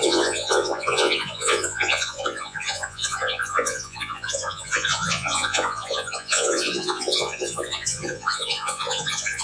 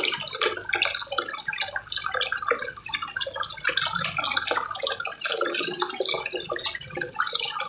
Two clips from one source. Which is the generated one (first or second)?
first